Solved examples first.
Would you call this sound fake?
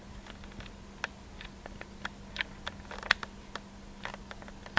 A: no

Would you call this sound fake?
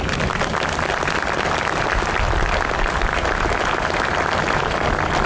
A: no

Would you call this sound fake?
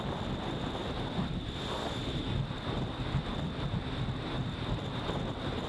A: no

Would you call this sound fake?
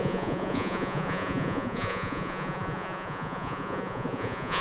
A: yes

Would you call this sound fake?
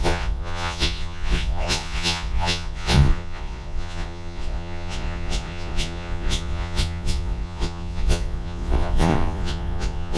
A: yes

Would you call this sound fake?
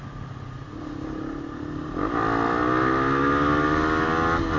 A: no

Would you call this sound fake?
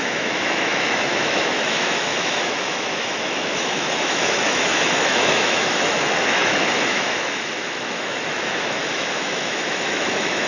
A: yes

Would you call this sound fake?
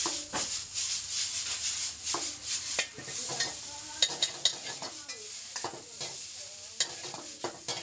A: no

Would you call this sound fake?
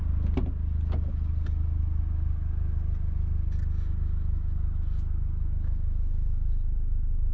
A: no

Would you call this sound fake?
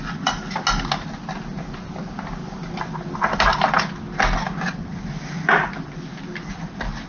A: no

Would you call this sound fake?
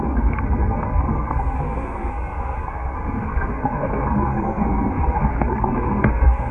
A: yes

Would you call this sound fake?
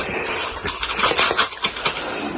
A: no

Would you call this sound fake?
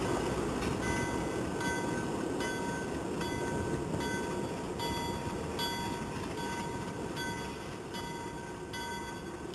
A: no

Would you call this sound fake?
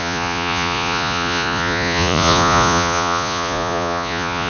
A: yes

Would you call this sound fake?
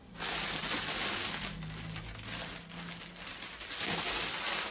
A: no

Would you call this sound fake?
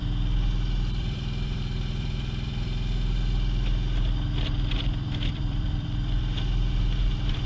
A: yes